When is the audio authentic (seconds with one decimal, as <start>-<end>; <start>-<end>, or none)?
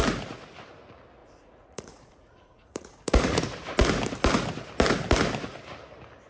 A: 0.0-1.2; 3.4-6.3